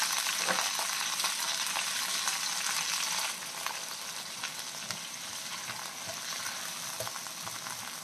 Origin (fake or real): real